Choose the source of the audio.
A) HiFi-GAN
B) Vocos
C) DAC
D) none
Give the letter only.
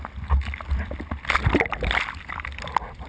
D